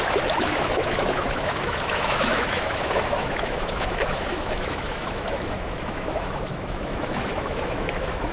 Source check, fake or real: fake